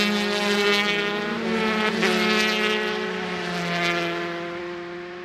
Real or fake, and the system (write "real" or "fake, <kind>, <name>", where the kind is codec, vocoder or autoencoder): real